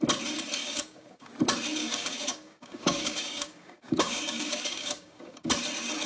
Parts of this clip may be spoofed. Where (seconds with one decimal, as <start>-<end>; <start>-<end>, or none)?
0.6-1.3; 1.8-5.5